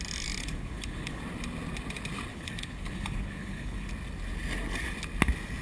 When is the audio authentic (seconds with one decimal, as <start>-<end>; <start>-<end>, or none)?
0.0-0.4; 1.2-2.3; 3.9-5.6